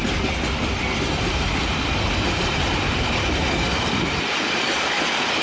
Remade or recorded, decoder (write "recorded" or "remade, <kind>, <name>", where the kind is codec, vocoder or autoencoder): recorded